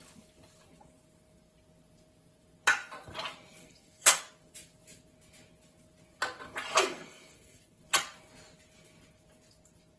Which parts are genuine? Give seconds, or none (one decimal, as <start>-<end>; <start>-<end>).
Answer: 0.0-3.6; 4.2-6.8; 7.8-10.0